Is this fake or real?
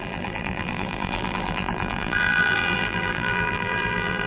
fake